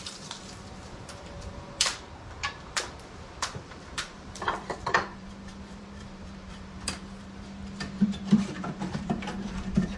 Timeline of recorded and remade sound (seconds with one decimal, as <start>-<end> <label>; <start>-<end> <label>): 0.0-10.0 remade